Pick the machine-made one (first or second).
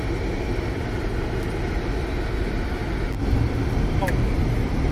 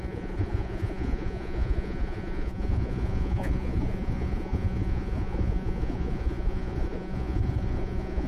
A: second